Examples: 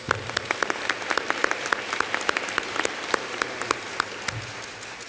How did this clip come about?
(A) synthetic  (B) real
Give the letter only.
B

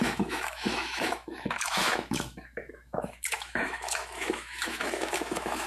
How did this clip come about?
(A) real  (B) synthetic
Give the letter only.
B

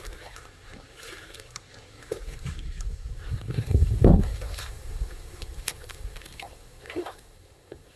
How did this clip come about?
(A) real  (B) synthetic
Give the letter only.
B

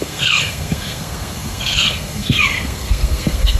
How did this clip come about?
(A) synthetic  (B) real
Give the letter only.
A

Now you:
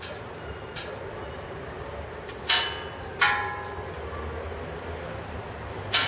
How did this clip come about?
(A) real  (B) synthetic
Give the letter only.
A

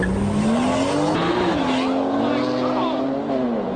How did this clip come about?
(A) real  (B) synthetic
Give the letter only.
A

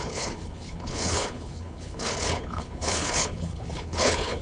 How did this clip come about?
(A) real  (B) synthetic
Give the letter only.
B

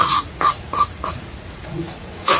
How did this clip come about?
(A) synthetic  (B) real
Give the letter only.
A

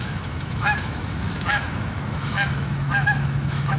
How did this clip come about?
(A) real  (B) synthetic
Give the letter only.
B